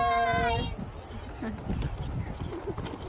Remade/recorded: recorded